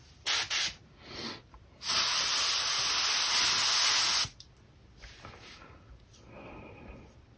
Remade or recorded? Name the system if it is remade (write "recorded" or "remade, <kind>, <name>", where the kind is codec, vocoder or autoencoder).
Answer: recorded